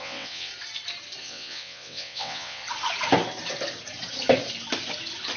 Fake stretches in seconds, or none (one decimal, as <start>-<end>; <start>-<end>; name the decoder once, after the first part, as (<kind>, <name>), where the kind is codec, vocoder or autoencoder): 0.0-0.5 (vocoder, WaveNeXt); 1.2-2.6